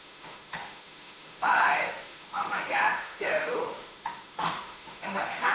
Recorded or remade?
remade